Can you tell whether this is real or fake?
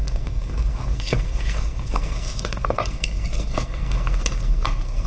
fake